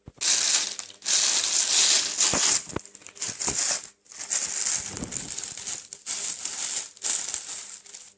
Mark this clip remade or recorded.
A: recorded